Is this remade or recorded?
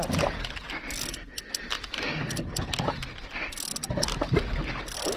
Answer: recorded